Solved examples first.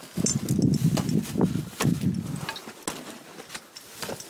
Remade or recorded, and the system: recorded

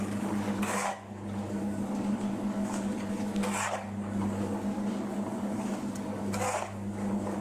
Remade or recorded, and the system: remade, codec, DAC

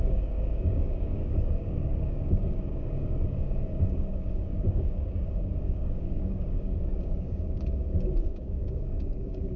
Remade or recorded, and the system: remade, codec, DAC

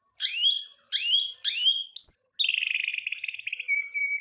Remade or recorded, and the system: recorded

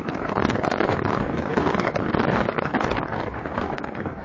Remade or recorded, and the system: remade, codec, DAC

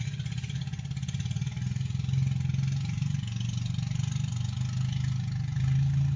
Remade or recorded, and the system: recorded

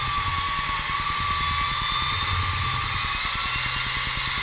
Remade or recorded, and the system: recorded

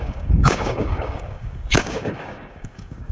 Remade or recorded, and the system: remade, codec, DAC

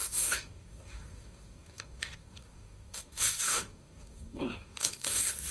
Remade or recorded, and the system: remade, codec, DAC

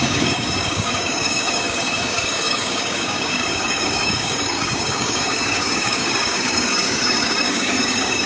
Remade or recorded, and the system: remade, codec, DAC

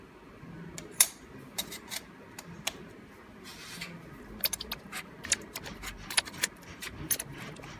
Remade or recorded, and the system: recorded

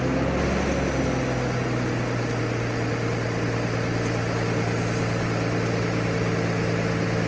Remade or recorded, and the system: recorded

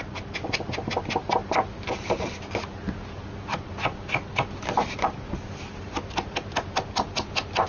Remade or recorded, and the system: recorded